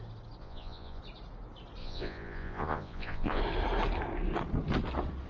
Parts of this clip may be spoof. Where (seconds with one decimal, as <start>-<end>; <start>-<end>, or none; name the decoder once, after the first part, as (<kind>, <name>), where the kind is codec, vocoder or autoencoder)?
0.4-1.0 (vocoder, Vocos); 1.8-3.4